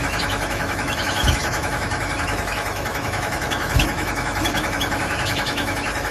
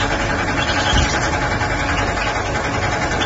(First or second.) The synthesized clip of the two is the first